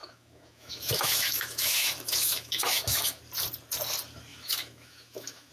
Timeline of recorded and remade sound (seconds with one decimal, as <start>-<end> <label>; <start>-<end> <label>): 0.0-3.2 remade; 3.2-4.3 recorded; 4.3-5.5 remade